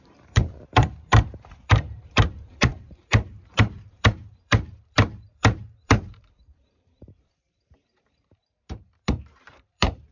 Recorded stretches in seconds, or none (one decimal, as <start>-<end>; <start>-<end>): none